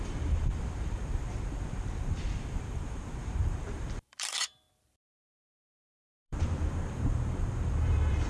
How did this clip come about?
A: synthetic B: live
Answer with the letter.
A